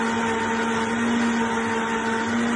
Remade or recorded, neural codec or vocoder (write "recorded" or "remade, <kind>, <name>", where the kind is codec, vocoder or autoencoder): recorded